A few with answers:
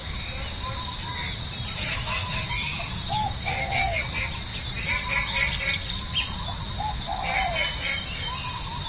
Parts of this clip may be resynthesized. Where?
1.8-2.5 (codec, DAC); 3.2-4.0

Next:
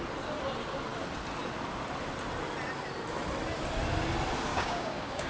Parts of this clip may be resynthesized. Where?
4.5-5.3 (codec, DAC)

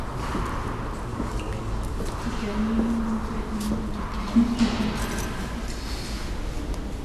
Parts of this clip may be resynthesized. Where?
1.1-2.0 (codec, DAC)

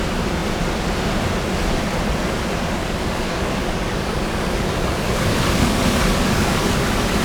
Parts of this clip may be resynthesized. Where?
2.8-7.2 (codec, DAC)